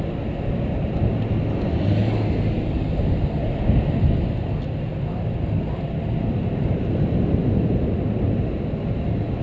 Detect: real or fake real